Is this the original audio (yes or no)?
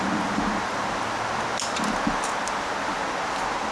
yes